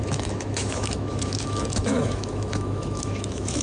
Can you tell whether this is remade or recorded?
remade